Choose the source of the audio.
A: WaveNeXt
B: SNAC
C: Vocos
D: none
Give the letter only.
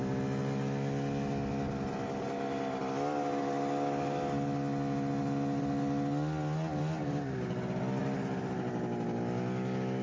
D